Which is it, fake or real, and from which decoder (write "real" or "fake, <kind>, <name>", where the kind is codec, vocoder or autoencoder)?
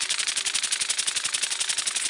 real